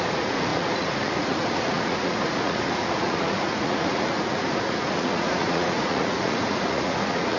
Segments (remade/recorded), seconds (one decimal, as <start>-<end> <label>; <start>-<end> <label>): 0.0-7.4 remade